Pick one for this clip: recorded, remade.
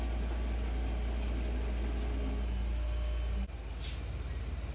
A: recorded